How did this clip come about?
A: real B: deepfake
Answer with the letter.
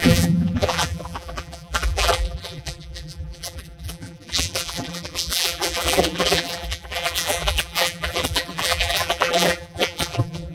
B